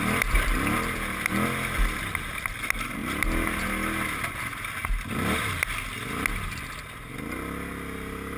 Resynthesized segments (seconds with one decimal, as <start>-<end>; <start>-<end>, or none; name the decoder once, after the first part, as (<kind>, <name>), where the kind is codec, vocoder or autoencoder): none